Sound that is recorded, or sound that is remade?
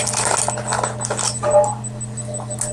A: recorded